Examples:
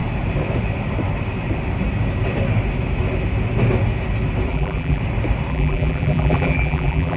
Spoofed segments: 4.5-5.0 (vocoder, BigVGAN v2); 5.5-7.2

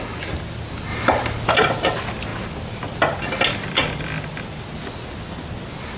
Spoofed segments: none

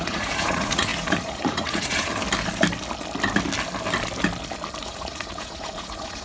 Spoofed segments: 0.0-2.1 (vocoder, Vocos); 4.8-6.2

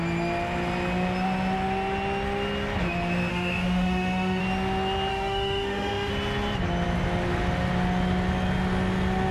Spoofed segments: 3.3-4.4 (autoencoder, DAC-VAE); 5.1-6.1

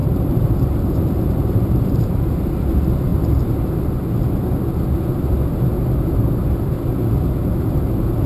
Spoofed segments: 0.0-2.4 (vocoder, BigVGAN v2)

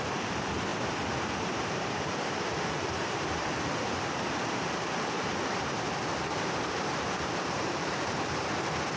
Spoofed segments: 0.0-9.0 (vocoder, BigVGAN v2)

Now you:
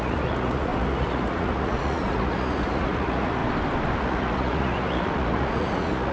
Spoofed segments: 0.0-3.4 (vocoder, Vocos); 4.0-6.1